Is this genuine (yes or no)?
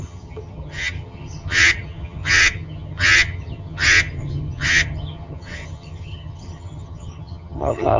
no